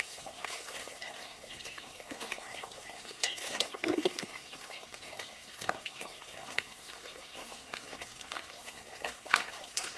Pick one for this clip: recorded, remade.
remade